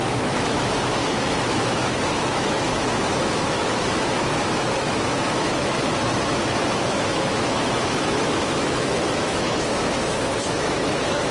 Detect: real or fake fake